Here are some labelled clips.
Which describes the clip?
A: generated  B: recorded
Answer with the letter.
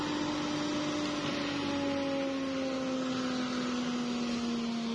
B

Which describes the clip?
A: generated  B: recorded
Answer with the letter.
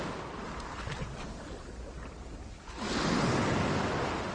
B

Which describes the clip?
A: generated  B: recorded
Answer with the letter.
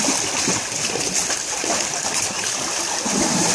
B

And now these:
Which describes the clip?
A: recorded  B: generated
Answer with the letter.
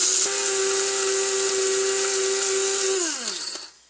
A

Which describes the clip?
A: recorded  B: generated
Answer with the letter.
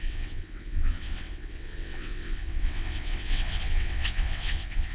B